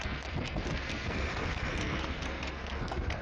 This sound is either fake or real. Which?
fake